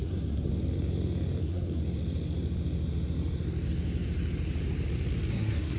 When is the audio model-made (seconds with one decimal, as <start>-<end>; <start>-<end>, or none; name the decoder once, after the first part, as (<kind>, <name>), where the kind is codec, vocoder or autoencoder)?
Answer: 0.0-0.5 (codec, SNAC); 1.4-1.8; 5.3-5.8